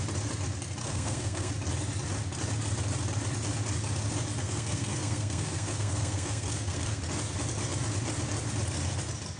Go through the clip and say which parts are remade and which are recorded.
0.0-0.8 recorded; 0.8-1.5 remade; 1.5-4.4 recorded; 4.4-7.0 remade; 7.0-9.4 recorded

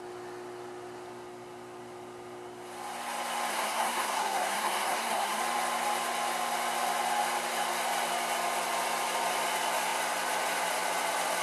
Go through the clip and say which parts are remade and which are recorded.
0.0-3.5 recorded; 3.5-5.4 remade; 5.4-11.4 recorded